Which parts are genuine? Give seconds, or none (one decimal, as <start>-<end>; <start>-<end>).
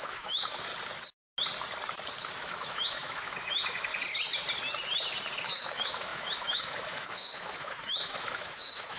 0.7-2.4; 3.9-5.4